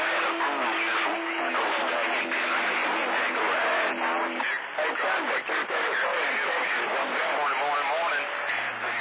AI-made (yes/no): no